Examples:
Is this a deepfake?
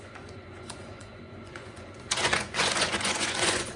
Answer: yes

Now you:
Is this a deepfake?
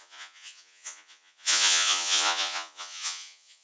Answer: yes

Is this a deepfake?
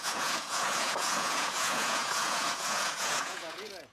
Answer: yes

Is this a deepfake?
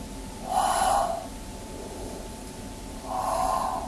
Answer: no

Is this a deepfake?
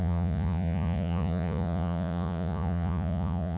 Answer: yes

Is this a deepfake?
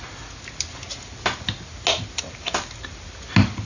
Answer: no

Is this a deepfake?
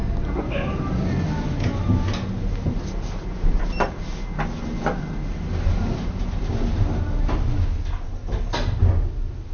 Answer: no